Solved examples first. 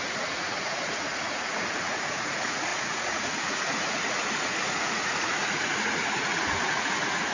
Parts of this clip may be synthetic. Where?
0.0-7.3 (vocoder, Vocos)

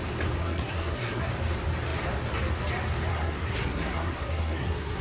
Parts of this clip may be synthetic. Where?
0.4-1.3 (codec, SNAC); 3.1-5.0